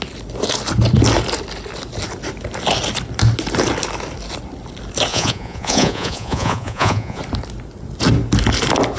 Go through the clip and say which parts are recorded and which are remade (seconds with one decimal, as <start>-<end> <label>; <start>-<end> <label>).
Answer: 0.0-5.1 recorded; 5.1-7.2 remade; 7.2-9.0 recorded

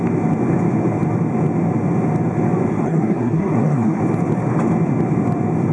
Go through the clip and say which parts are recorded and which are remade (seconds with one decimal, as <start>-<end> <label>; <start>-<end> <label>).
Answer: 0.0-2.7 recorded; 2.7-4.0 remade; 4.0-5.7 recorded

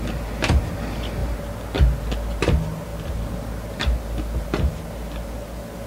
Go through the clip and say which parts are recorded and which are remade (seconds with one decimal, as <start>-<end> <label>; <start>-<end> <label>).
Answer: 0.0-5.9 recorded

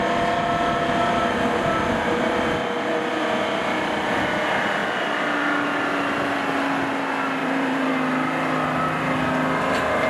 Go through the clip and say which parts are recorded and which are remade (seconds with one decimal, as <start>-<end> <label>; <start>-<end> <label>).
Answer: 0.0-7.4 recorded; 7.4-7.9 remade; 7.9-10.1 recorded

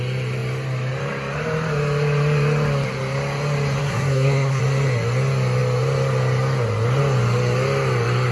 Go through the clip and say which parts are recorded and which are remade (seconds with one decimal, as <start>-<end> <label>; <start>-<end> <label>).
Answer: 0.0-3.8 recorded; 3.8-4.6 remade; 4.6-8.3 recorded

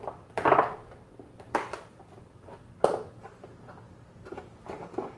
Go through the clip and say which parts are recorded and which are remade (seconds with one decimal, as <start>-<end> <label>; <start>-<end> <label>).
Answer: 0.0-0.8 recorded; 0.8-2.4 remade; 2.4-5.2 recorded